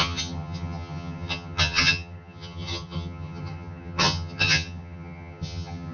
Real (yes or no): no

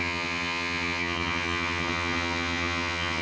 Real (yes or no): no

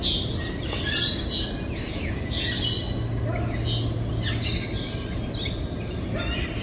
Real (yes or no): yes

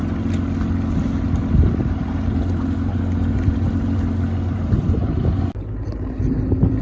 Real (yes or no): yes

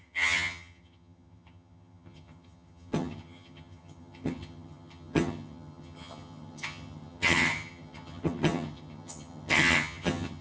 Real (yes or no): no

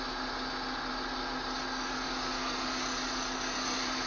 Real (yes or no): yes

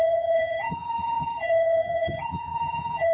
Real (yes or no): no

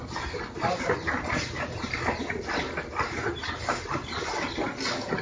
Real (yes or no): yes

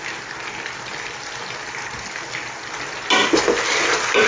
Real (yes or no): yes